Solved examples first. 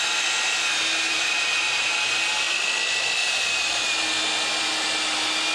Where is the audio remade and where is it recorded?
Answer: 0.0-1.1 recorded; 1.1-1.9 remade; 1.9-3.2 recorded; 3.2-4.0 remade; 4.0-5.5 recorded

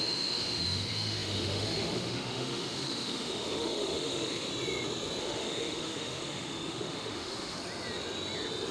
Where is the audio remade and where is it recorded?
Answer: 0.0-4.5 remade; 4.5-5.2 recorded; 5.2-7.6 remade; 7.6-8.7 recorded